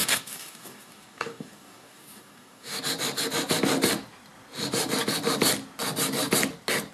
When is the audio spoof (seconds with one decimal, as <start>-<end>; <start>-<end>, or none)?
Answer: 0.0-2.8